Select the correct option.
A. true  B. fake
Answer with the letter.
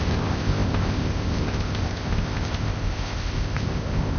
B